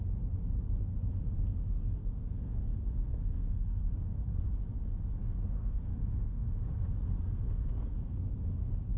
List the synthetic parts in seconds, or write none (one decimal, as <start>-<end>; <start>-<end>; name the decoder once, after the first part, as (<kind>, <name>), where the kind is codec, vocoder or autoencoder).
2.0-4.4 (codec, SNAC); 5.2-8.4